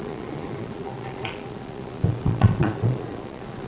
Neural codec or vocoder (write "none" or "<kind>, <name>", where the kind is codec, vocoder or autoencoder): vocoder, Vocos